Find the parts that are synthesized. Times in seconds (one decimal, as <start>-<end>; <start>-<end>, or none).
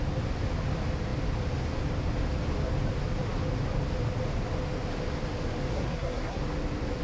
5.7-6.4